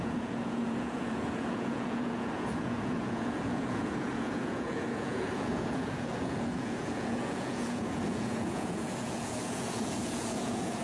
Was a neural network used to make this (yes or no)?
yes